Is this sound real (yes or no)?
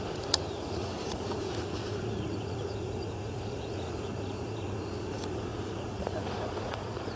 no